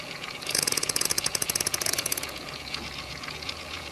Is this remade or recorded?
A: remade